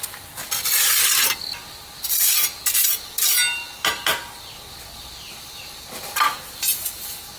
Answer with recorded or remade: recorded